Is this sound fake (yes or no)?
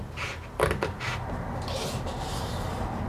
no